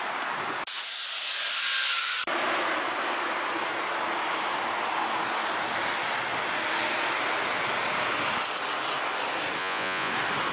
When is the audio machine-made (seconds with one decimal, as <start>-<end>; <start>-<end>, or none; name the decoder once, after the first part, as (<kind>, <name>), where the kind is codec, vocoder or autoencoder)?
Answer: 9.6-10.1 (vocoder, Vocos)